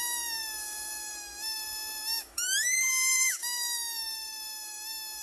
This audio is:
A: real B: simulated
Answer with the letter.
B